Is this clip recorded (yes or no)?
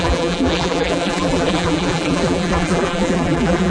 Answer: no